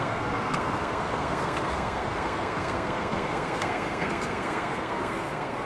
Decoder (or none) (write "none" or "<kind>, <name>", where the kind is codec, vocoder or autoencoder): codec, SNAC